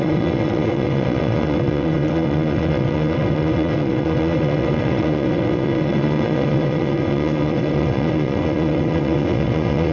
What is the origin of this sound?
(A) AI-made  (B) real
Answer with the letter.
A